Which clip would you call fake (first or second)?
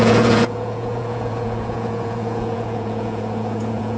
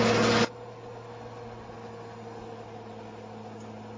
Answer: first